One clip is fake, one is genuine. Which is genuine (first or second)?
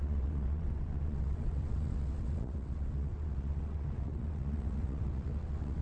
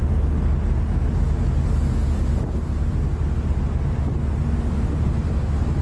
second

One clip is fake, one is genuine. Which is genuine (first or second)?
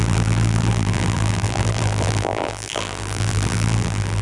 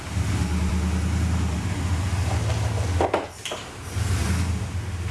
second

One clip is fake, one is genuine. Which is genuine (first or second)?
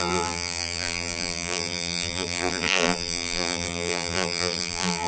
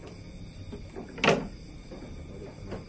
second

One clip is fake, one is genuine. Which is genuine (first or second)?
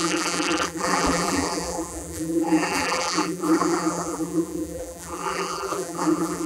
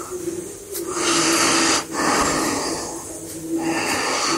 second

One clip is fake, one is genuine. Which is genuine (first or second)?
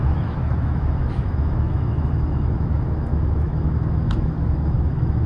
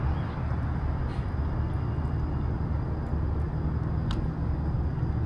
second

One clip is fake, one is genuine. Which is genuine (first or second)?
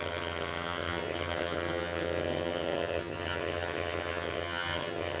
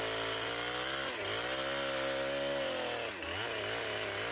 second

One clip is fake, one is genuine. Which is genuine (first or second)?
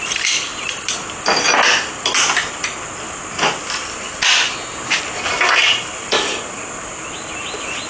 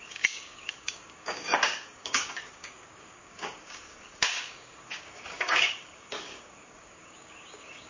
first